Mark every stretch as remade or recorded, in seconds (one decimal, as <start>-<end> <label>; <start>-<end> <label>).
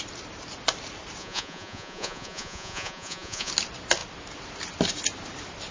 0.0-1.2 recorded; 1.2-3.5 remade; 3.5-5.7 recorded